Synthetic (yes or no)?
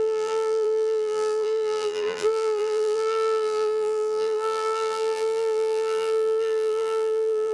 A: yes